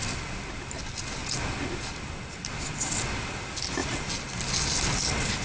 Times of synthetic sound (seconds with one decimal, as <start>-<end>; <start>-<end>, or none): none